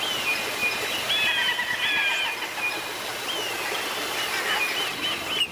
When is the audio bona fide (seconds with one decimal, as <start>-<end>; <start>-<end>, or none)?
0.0-5.5